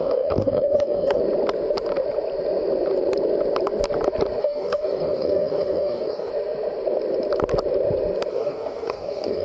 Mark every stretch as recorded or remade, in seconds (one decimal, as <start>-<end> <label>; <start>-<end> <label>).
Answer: 0.0-1.2 remade; 1.2-4.4 recorded; 4.4-6.3 remade; 6.3-8.3 recorded; 8.3-9.4 remade